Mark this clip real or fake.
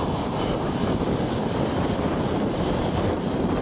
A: real